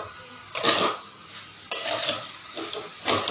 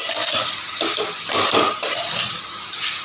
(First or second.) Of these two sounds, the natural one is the first